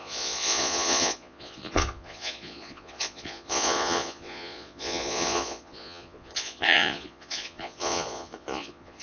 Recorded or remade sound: remade